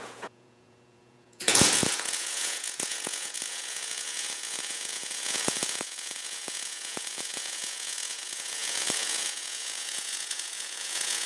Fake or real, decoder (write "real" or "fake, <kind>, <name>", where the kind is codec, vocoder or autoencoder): fake, vocoder, Vocos